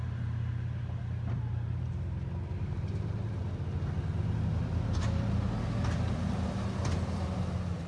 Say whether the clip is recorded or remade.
recorded